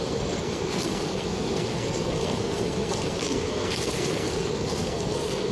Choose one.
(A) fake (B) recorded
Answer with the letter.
A